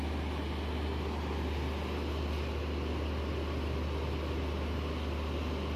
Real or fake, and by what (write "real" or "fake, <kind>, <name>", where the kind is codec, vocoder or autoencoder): real